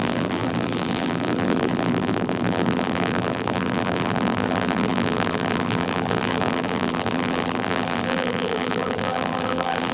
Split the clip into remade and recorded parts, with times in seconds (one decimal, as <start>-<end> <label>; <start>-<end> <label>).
0.0-9.9 remade